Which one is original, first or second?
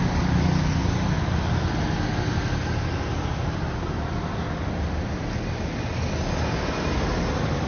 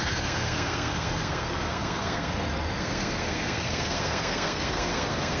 first